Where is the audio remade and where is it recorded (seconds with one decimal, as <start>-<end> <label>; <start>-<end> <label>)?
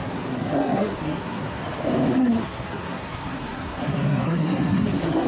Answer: 0.0-1.6 remade; 1.6-2.1 recorded; 2.1-5.3 remade